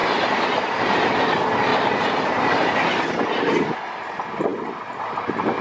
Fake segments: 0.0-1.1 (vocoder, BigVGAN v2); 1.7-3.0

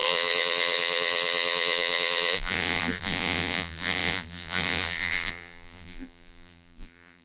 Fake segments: 0.0-7.2 (vocoder, BigVGAN v2)